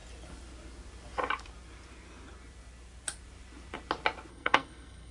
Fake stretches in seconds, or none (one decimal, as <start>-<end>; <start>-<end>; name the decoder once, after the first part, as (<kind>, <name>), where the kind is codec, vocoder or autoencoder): 4.3-5.1 (codec, SNAC)